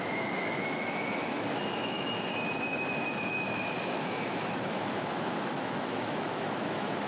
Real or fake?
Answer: fake